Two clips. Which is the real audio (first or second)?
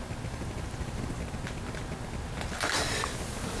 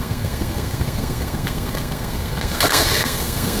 first